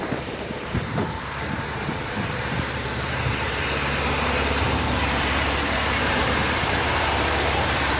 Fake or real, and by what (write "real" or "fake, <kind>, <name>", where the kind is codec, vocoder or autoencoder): fake, vocoder, BigVGAN v2